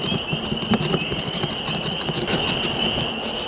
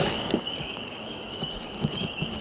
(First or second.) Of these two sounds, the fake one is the second